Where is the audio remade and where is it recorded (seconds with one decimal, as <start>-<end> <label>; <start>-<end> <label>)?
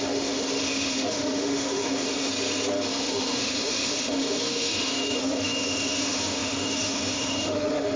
0.0-2.3 remade; 2.3-2.9 recorded; 2.9-8.0 remade